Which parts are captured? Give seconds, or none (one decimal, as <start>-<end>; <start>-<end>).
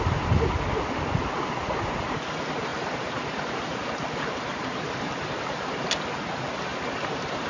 0.0-1.6; 2.3-2.7; 5.4-6.7